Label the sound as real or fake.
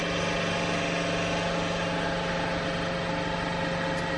real